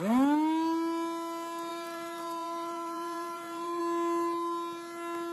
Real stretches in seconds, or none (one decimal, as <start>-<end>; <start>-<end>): 0.0-1.7; 3.8-5.3